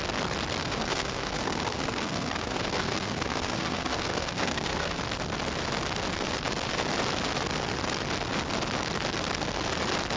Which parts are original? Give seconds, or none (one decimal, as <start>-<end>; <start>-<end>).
0.0-0.6; 5.0-10.2